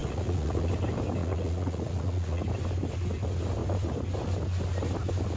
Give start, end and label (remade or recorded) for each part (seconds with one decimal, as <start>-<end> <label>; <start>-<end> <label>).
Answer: 0.0-0.7 remade; 0.7-1.2 recorded; 1.2-2.4 remade; 2.4-5.4 recorded